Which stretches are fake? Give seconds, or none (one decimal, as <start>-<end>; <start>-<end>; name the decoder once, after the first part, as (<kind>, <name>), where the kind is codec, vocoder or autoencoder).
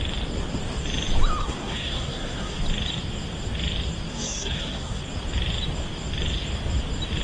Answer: 1.4-2.6 (codec, SNAC); 4.1-5.0